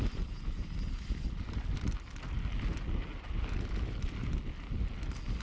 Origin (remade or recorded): recorded